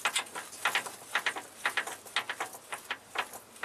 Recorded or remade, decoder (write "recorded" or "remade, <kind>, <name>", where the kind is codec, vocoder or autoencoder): recorded